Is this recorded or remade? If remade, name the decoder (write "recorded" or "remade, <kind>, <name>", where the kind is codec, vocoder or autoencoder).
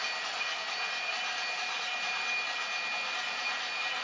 recorded